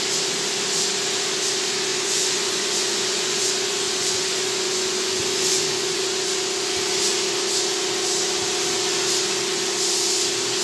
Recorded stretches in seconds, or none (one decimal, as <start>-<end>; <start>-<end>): 0.0-1.9; 6.0-10.6